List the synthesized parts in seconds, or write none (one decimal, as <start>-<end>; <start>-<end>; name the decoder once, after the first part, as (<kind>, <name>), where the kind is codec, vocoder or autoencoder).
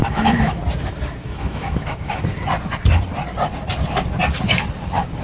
0.0-0.6 (autoencoder, DAC-VAE); 1.2-2.2